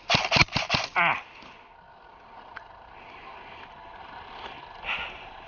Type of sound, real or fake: real